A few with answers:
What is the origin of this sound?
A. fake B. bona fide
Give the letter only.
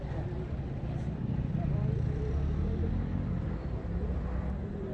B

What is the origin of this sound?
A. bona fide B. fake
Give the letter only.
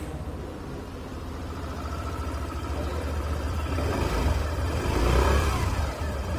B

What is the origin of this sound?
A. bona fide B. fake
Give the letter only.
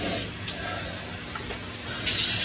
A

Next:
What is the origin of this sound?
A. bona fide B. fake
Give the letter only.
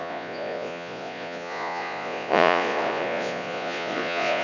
B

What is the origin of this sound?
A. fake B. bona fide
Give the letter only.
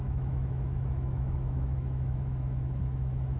A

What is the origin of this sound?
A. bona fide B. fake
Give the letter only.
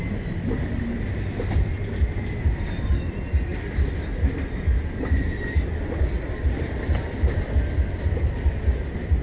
A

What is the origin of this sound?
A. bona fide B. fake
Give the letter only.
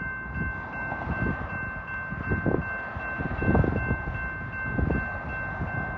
A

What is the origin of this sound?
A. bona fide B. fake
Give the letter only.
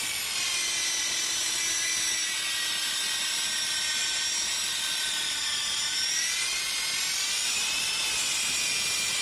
A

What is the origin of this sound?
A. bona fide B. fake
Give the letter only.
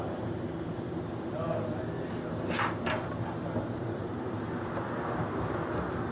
A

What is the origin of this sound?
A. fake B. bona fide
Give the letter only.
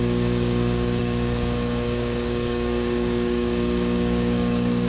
A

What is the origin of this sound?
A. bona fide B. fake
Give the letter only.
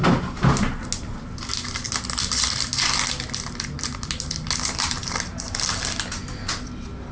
A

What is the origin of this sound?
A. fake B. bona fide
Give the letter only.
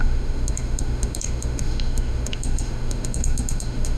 A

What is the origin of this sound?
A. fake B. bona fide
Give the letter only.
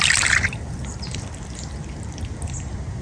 B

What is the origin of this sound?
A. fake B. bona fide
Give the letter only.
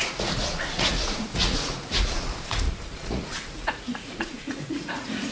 A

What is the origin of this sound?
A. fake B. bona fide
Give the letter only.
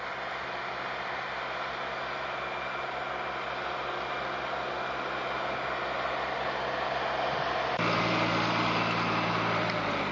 B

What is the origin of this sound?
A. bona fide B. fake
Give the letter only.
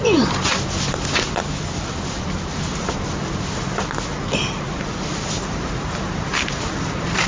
A